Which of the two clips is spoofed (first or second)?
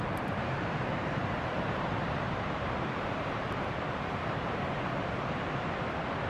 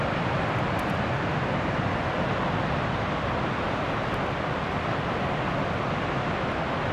first